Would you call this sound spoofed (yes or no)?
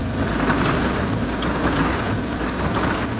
no